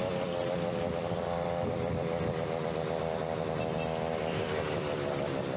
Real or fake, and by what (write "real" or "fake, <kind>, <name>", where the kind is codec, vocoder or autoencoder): real